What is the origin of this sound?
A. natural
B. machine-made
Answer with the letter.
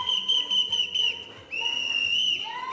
A